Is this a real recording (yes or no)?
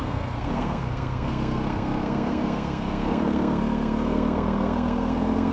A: no